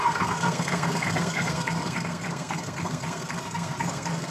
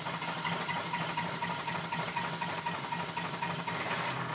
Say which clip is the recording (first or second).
second